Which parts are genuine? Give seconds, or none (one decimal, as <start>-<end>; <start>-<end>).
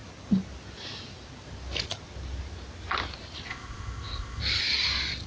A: 0.0-3.5; 4.4-5.3